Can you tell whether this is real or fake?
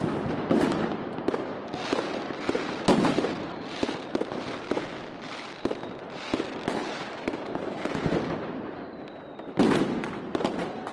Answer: real